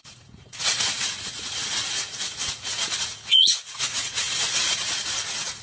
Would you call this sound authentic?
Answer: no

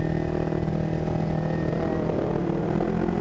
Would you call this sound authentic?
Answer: yes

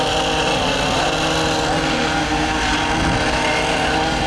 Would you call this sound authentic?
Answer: yes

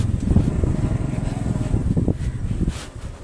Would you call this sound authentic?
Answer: yes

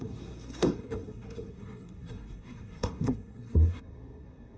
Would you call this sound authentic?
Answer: no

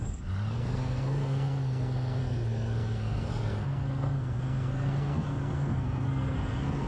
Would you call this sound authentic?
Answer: no